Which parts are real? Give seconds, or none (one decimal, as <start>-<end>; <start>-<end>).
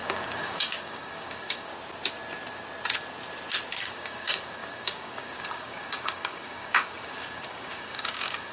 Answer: 1.7-3.8